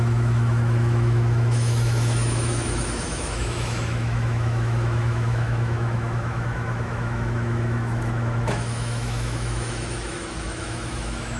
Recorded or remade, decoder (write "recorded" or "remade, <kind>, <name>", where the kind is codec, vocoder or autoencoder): remade, autoencoder, DAC-VAE